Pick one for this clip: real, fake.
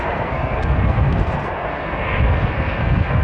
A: fake